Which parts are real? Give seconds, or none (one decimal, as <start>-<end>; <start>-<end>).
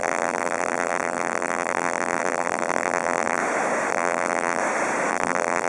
3.4-3.9; 4.6-5.1